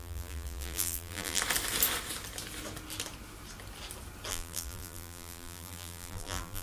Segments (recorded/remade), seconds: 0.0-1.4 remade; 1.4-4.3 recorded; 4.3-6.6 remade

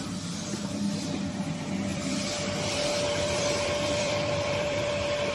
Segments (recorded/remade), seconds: 0.0-1.9 recorded; 1.9-5.3 remade

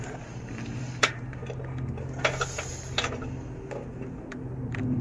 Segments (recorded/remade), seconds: 0.0-1.4 remade; 1.4-4.3 recorded; 4.3-5.0 remade

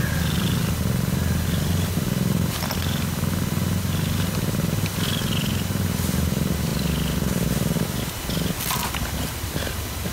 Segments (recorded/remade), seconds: 0.0-10.1 recorded

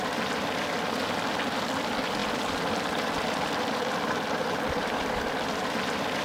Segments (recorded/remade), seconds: 0.0-2.2 recorded; 2.2-5.7 remade; 5.7-6.2 recorded